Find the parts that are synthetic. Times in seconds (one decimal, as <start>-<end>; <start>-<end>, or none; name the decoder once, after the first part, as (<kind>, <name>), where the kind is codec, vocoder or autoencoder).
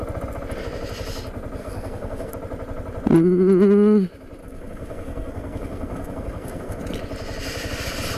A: 1.6-2.3 (codec, SNAC); 4.4-6.8